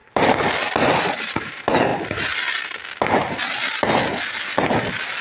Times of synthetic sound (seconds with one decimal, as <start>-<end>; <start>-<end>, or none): 1.2-1.9